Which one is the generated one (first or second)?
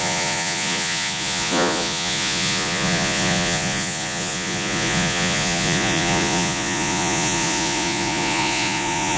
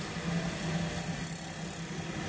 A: first